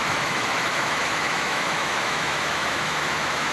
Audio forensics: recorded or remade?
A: remade